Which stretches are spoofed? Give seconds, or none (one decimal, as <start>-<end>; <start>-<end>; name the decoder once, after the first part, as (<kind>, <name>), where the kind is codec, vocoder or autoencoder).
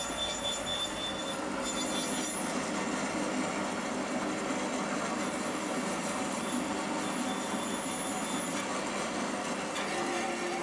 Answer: 5.7-6.5 (vocoder, BigVGAN v2)